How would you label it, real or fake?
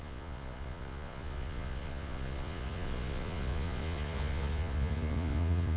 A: fake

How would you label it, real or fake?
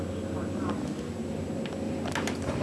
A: real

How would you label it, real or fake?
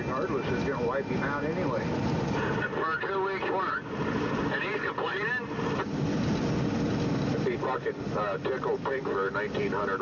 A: real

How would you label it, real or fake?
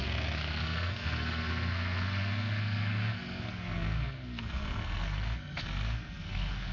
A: fake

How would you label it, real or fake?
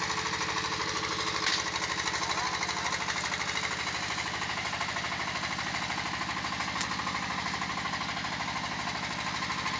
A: real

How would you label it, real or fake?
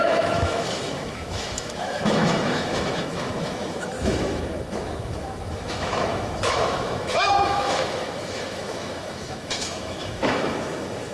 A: fake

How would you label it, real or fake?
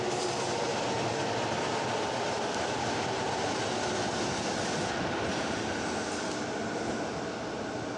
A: real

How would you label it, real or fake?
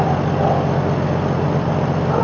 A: real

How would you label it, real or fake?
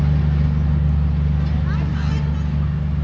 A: real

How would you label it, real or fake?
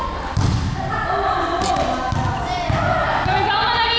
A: real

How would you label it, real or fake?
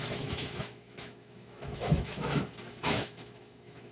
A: fake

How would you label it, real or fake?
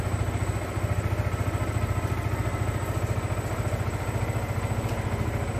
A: real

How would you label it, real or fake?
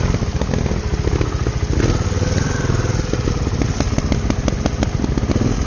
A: real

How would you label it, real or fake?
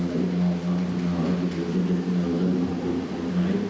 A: real